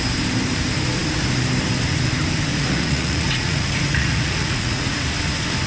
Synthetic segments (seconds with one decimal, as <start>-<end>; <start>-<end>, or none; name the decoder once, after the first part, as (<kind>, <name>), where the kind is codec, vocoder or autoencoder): 2.5-5.0 (vocoder, Vocos)

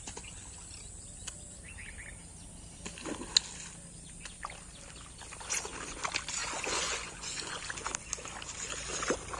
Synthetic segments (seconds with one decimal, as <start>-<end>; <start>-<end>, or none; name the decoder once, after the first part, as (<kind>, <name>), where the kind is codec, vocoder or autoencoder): 6.4-7.6 (vocoder, Vocos)